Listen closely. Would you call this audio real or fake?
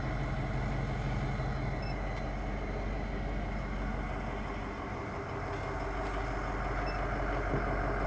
real